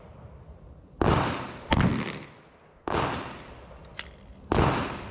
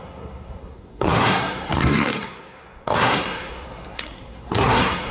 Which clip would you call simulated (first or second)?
second